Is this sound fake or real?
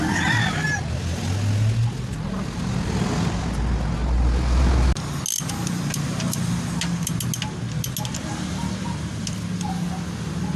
real